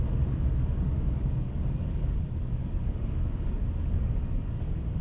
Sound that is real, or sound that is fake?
fake